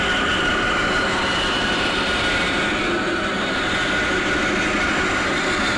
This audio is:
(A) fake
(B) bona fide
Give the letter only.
B